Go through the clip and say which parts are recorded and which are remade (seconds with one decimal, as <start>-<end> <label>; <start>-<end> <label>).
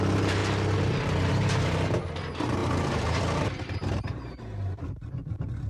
0.0-0.4 remade; 0.4-1.3 recorded; 1.3-5.7 remade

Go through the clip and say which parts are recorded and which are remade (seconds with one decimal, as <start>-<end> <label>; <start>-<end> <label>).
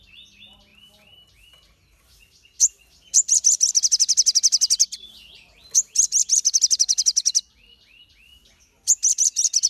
0.0-9.7 recorded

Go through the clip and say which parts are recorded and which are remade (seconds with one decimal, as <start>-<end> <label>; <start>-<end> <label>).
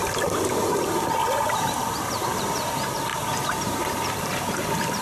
0.0-1.2 recorded; 1.2-2.7 remade; 2.7-3.1 recorded; 3.1-5.0 remade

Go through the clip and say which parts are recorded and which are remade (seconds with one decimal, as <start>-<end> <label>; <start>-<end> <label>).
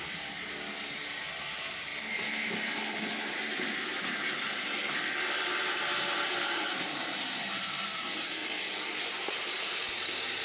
0.0-1.9 remade; 1.9-3.2 recorded; 3.2-4.8 remade; 4.8-5.4 recorded; 5.4-8.4 remade; 8.4-9.0 recorded; 9.0-10.4 remade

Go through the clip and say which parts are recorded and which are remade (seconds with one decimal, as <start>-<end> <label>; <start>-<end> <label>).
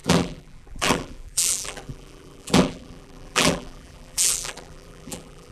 0.0-5.5 remade